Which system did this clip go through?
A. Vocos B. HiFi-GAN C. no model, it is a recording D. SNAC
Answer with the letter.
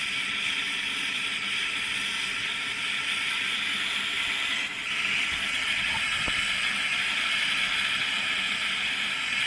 C